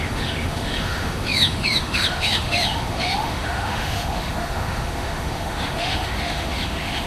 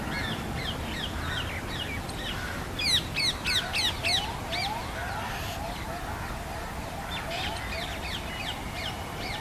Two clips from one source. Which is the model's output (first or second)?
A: first